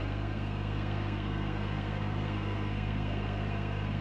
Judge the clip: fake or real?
fake